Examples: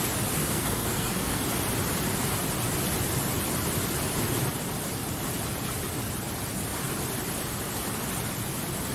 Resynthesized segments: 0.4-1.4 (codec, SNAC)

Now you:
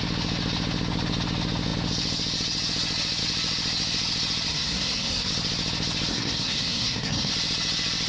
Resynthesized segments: 4.5-5.3 (codec, SNAC); 6.1-7.3

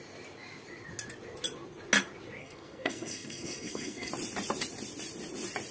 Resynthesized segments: 2.4-4.1 (codec, SNAC)

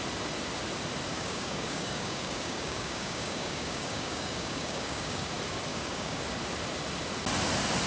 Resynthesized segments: 1.1-5.3 (codec, DAC); 5.7-6.2

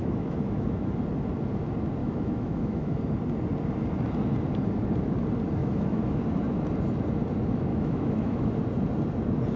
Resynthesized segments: 0.0-1.0 (autoencoder, DAC-VAE); 2.0-3.0; 5.6-6.2; 7.7-8.6

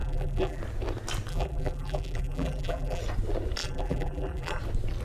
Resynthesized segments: 0.0-0.6 (vocoder, BigVGAN v2); 1.3-3.0; 3.6-4.6

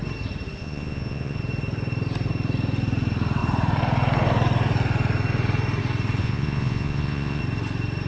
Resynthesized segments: 0.6-1.4 (vocoder, Vocos); 6.2-7.4

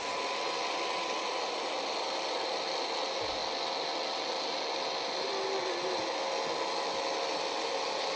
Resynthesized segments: none